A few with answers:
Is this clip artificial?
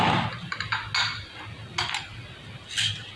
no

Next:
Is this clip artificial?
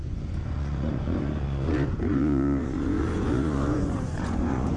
yes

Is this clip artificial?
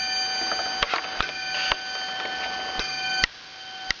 no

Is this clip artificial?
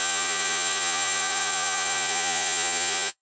yes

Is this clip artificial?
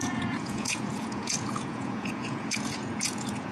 yes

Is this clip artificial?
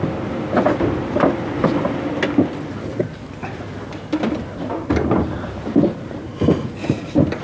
no